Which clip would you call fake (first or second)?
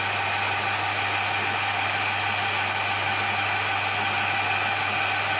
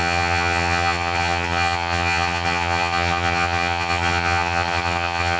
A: second